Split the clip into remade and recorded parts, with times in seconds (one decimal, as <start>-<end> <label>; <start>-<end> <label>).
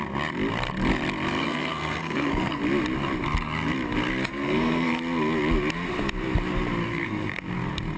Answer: 0.0-1.4 recorded; 1.4-2.6 remade; 2.6-4.3 recorded; 4.3-5.0 remade; 5.0-6.8 recorded; 6.8-7.4 remade; 7.4-8.0 recorded